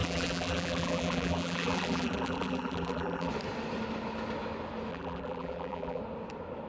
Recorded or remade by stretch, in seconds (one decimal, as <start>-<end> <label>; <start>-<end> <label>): 0.0-3.3 remade; 3.3-4.9 recorded; 4.9-6.0 remade; 6.0-6.7 recorded

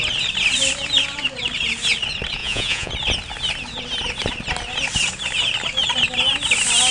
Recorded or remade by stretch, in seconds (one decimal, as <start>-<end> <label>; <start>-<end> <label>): 0.0-2.4 recorded; 2.4-2.9 remade; 2.9-6.9 recorded